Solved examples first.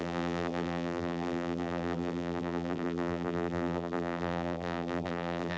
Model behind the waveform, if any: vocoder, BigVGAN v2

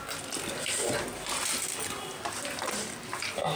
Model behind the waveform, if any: none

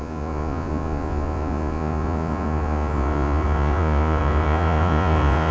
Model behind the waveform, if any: vocoder, Vocos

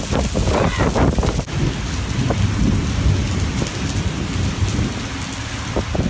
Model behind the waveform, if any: none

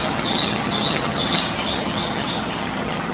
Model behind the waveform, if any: vocoder, HiFi-GAN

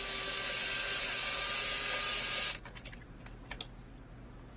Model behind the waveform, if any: none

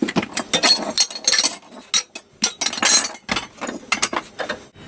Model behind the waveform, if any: none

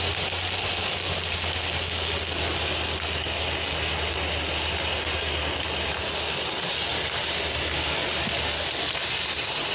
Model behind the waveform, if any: none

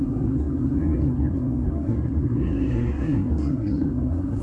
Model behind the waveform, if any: codec, SNAC